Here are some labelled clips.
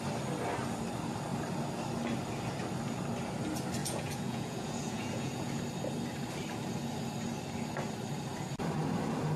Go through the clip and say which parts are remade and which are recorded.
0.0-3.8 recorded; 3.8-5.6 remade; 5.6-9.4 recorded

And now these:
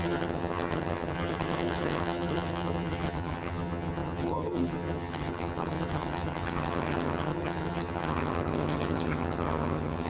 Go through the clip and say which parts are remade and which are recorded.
0.0-10.1 remade

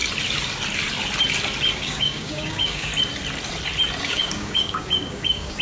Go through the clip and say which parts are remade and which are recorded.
0.0-1.7 recorded; 1.7-2.9 remade; 2.9-4.0 recorded; 4.0-5.6 remade

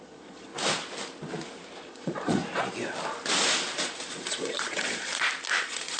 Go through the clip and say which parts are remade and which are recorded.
0.0-0.5 remade; 0.5-1.8 recorded; 1.8-2.4 remade; 2.4-3.8 recorded; 3.8-5.1 remade; 5.1-5.6 recorded; 5.6-6.0 remade